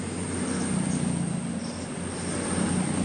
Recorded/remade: recorded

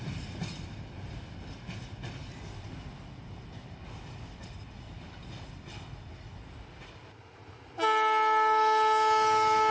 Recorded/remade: recorded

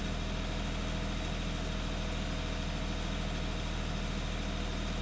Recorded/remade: recorded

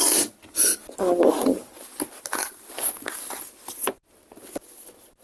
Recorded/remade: recorded